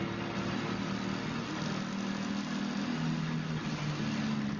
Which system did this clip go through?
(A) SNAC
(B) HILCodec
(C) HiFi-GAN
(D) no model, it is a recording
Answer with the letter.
D